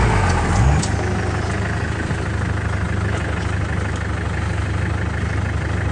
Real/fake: real